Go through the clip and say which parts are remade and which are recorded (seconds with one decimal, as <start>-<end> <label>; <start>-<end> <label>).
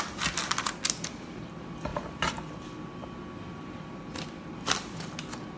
0.0-5.6 recorded